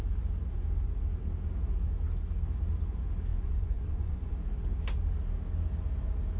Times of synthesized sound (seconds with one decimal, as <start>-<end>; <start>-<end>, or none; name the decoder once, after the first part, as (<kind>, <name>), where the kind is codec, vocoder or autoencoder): 3.3-4.3 (vocoder, Vocos)